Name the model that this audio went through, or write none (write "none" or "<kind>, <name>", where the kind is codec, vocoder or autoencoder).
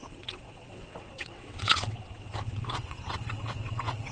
vocoder, WaveNeXt